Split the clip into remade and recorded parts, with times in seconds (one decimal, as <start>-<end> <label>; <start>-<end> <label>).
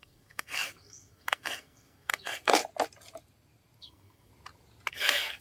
0.0-2.6 remade; 2.6-3.8 recorded; 3.8-4.3 remade; 4.3-4.9 recorded; 4.9-5.4 remade